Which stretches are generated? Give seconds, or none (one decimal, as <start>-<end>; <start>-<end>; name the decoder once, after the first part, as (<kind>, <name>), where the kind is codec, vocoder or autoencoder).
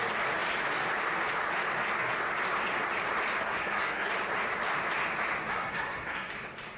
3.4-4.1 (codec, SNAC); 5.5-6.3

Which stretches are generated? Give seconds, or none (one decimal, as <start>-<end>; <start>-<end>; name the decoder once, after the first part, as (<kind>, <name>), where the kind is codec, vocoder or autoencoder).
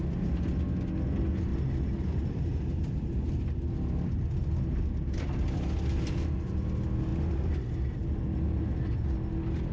none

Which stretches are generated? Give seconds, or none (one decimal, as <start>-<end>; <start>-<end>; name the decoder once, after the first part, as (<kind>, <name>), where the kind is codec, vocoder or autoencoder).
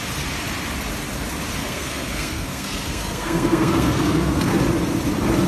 1.6-4.6 (codec, SNAC)